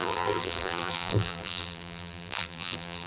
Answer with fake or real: fake